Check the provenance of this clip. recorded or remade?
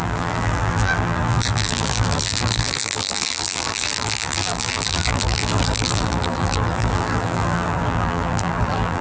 remade